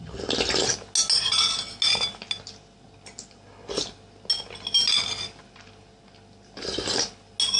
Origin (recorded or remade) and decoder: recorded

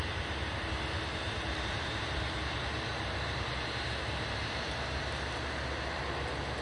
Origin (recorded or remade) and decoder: remade, vocoder, BigVGAN v2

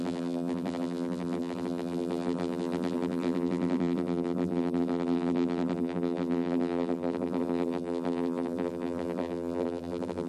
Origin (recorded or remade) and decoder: remade, vocoder, BigVGAN v2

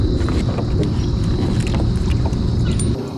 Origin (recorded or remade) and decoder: recorded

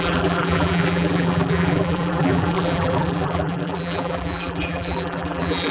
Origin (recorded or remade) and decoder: remade, vocoder, BigVGAN v2